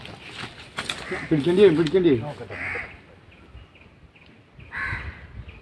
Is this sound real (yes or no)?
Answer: yes